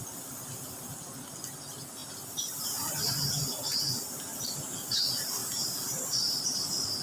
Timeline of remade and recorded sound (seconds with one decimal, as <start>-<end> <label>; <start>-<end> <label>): 0.0-7.0 recorded